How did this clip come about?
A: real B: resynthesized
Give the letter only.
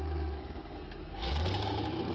B